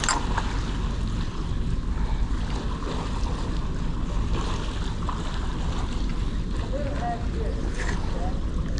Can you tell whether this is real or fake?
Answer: real